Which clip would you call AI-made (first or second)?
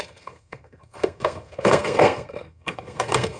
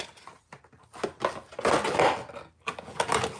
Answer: first